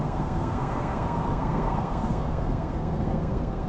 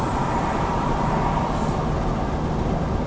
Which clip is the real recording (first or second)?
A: second